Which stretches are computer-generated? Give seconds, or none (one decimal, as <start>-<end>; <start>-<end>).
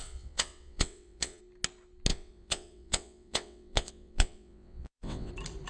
0.0-1.4; 2.1-5.3